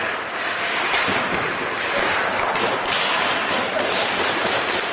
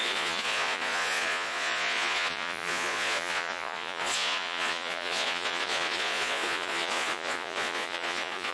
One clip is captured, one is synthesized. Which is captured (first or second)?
first